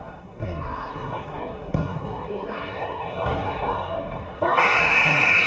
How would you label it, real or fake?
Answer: fake